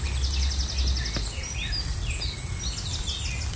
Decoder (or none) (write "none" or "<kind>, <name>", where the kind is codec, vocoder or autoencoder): none